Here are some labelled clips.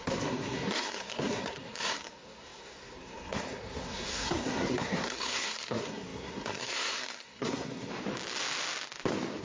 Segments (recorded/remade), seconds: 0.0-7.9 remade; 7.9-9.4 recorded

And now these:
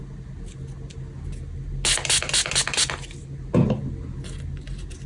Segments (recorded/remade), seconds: 0.0-5.1 recorded

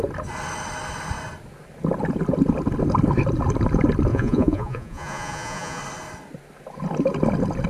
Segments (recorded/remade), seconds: 0.0-4.1 recorded; 4.1-5.8 remade; 5.8-7.7 recorded